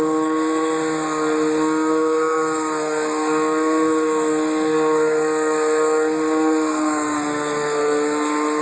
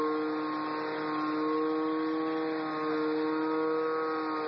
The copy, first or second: first